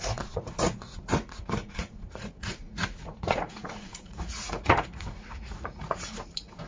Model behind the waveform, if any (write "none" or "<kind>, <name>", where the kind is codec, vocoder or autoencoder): vocoder, Vocos